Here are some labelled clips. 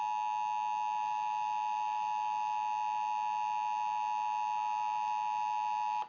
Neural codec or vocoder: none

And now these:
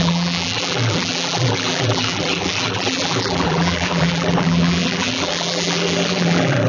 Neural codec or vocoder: vocoder, BigVGAN v2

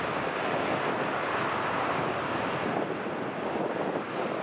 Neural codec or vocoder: none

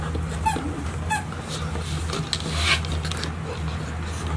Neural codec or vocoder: none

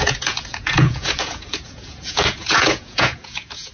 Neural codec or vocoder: vocoder, Vocos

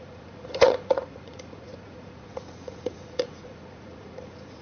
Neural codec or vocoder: vocoder, Vocos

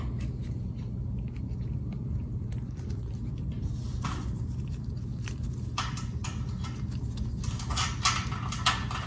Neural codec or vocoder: none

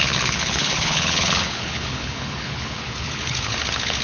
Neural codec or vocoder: codec, HILCodec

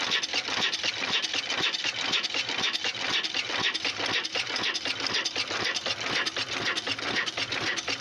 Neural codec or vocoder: none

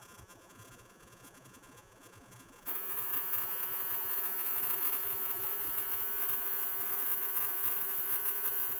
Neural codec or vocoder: vocoder, Vocos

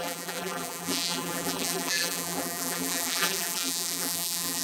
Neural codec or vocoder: vocoder, BigVGAN v2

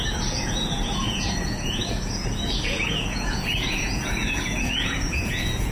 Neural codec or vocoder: vocoder, Vocos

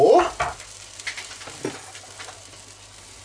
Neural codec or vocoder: none